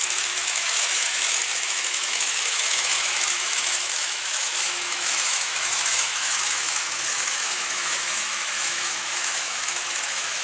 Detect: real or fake fake